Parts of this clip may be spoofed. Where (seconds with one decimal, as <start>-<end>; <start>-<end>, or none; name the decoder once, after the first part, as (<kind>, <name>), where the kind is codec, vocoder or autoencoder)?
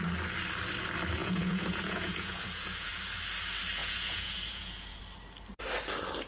1.2-2.9 (vocoder, Vocos); 3.8-5.0